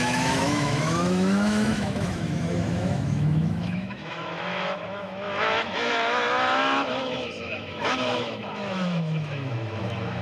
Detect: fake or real fake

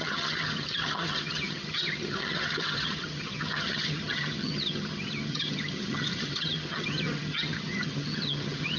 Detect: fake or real fake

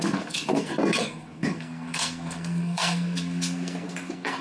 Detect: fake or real fake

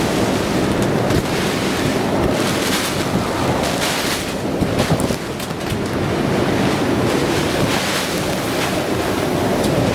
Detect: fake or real real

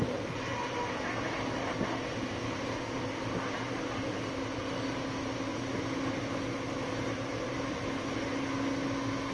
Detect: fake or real real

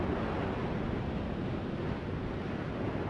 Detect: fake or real real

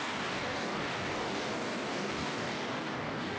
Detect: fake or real fake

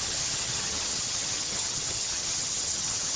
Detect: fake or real fake